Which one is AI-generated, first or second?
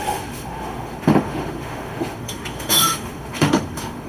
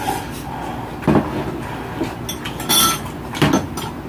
first